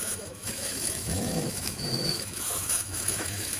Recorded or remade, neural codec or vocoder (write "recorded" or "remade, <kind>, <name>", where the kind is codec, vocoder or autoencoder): remade, autoencoder, DAC-VAE